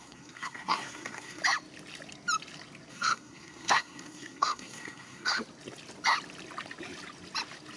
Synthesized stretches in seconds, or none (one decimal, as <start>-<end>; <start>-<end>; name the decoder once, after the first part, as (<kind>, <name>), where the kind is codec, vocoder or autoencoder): 0.0-1.4 (codec, SNAC); 2.9-5.4